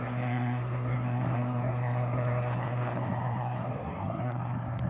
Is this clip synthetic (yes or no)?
yes